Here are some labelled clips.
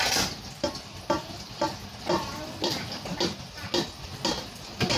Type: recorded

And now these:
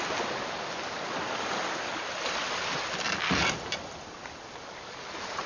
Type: recorded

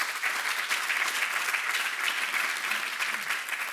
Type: recorded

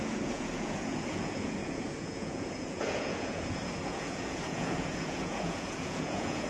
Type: remade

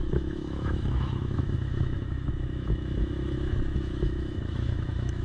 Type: remade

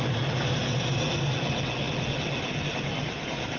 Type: recorded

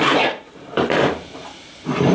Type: remade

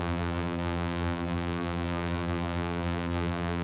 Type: remade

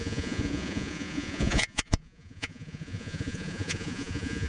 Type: remade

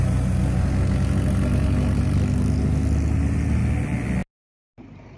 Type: recorded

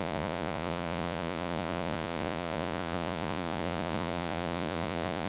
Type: remade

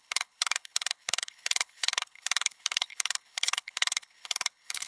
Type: remade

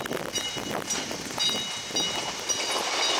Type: recorded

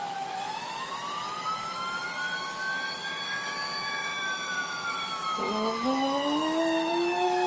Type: remade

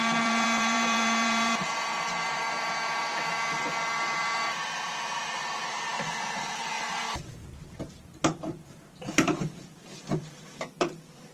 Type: remade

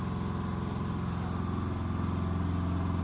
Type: recorded